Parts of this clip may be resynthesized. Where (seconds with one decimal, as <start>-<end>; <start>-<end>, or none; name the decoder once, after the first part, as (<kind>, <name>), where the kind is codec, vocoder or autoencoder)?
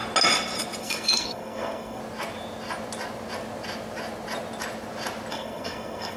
0.8-2.0 (codec, SNAC); 5.3-6.2